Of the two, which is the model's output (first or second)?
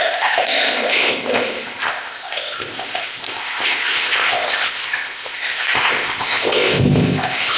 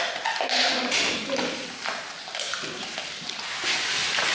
first